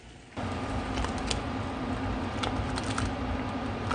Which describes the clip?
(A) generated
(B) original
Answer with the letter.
B